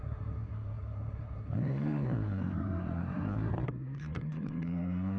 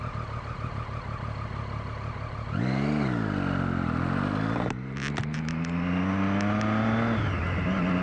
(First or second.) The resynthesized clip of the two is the first